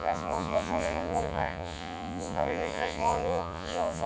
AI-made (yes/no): yes